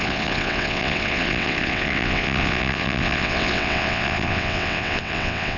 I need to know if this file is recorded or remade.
remade